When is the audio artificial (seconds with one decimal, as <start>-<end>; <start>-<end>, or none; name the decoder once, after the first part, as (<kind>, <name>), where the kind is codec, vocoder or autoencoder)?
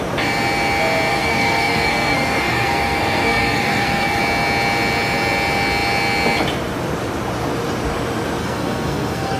1.1-4.2 (codec, SNAC); 8.4-9.4